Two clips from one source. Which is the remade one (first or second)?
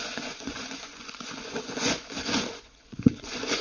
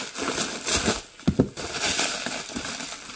first